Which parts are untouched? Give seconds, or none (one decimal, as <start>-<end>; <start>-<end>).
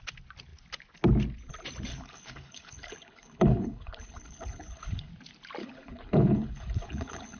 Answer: 0.0-1.9; 5.1-5.6